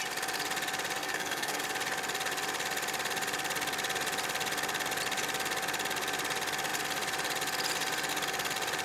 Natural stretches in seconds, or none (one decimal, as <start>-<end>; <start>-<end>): 0.0-1.0; 1.6-8.8